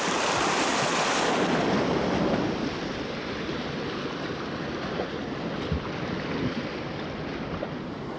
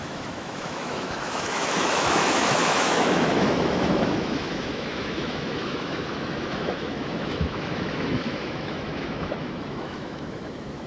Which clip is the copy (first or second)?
second